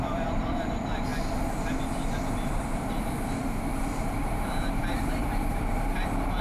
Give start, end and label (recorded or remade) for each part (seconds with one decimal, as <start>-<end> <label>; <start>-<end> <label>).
0.0-1.1 remade; 1.1-1.9 recorded; 1.9-6.4 remade